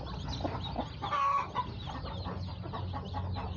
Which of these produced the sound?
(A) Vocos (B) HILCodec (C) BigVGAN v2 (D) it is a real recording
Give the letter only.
D